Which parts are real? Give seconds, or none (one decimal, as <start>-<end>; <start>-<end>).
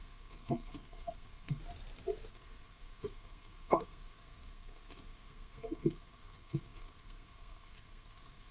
1.6-2.3